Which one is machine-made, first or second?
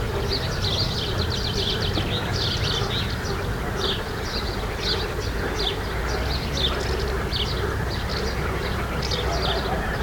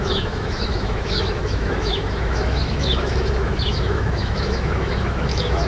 second